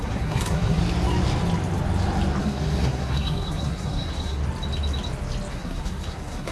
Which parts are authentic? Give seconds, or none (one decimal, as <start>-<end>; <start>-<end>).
0.8-2.4; 4.4-5.5

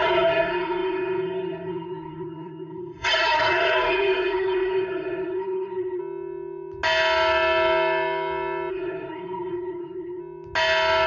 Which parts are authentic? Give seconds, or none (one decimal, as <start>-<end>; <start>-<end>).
6.0-8.7; 10.2-11.1

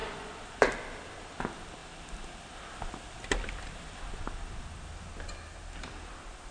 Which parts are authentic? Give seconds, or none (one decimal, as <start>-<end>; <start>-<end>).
0.6-6.5

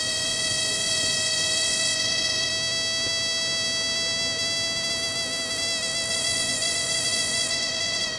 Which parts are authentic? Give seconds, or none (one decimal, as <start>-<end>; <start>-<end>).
2.5-6.1